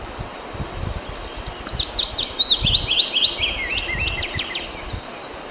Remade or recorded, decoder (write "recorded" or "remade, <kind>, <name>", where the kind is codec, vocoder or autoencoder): recorded